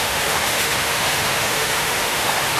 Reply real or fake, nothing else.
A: fake